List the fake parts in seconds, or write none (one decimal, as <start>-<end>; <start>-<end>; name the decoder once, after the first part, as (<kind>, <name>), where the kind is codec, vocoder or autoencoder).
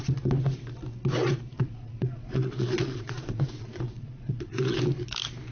1.5-4.8 (vocoder, Vocos)